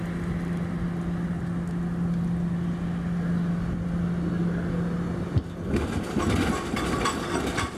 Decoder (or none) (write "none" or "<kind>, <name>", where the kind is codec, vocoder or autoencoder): none